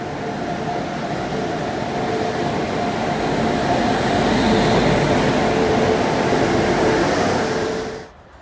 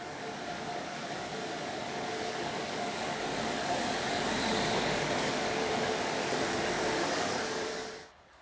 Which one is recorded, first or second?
first